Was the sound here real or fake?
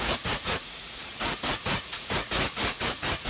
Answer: fake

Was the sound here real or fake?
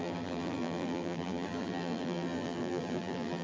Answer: fake